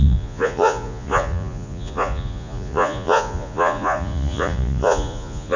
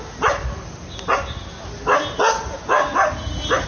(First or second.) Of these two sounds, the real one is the second